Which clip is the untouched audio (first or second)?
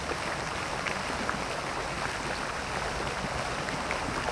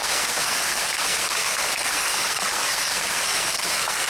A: first